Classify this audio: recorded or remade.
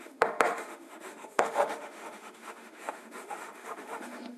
remade